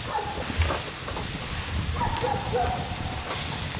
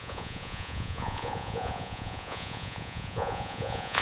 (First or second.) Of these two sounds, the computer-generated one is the second